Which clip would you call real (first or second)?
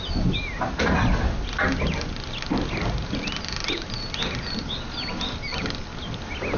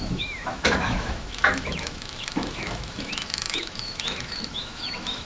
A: first